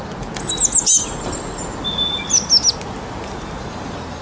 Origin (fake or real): real